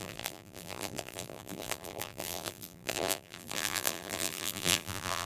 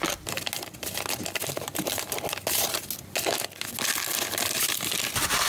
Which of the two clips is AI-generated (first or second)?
first